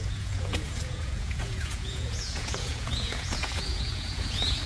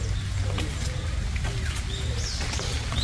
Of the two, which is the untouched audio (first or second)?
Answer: second